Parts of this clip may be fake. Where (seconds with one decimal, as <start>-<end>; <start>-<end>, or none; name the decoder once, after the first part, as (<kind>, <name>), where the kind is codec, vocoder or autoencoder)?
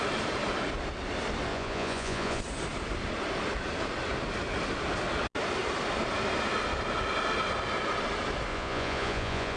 1.5-2.4 (vocoder, Vocos); 8.5-9.6